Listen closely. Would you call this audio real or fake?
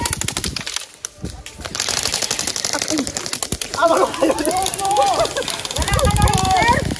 real